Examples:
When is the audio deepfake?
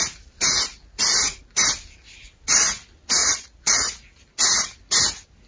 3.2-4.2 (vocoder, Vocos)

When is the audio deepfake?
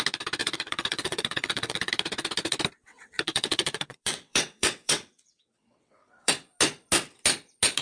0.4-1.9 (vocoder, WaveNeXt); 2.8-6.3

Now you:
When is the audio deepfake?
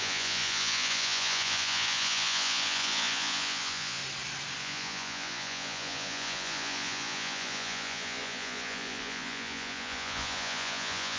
0.0-4.0 (vocoder, Vocos); 4.6-11.2